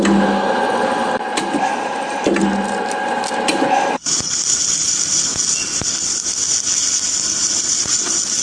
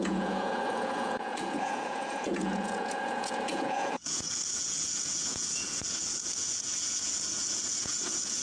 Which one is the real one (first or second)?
first